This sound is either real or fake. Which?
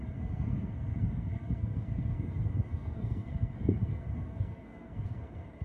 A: fake